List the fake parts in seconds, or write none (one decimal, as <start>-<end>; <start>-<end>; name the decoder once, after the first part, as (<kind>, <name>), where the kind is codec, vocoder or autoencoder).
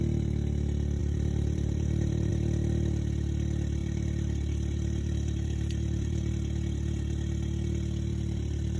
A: 1.0-2.3 (vocoder, BigVGAN v2); 3.8-6.3; 8.1-8.8